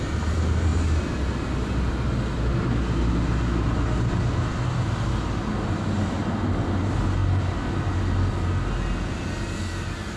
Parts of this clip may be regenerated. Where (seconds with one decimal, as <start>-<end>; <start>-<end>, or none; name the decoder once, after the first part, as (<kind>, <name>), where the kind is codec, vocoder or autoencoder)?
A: none